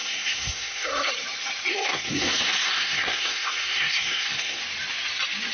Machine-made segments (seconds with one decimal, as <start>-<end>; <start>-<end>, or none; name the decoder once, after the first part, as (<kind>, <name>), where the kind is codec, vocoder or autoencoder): 0.0-1.1 (codec, SNAC); 1.7-4.6